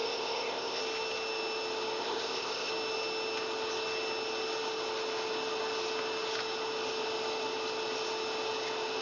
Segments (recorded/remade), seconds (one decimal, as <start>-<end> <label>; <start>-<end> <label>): 0.0-0.8 remade; 0.8-2.0 recorded; 2.0-2.7 remade; 2.7-9.0 recorded